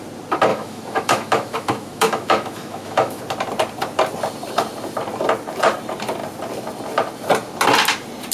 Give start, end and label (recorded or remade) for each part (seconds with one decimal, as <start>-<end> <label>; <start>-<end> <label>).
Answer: 0.0-0.5 recorded; 0.5-3.2 remade; 3.2-8.3 recorded